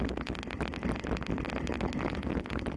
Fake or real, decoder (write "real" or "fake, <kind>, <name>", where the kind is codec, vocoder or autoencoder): real